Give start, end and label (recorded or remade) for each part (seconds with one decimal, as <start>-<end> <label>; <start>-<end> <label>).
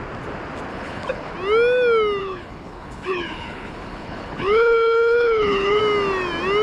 0.0-0.7 recorded; 0.7-1.3 remade; 1.3-2.2 recorded; 2.2-5.8 remade; 5.8-6.6 recorded